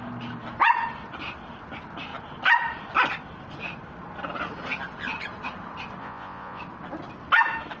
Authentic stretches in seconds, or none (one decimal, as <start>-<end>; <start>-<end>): 0.0-6.0; 6.6-7.8